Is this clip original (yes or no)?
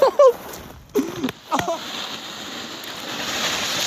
yes